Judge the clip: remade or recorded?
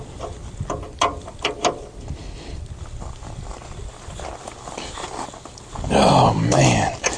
recorded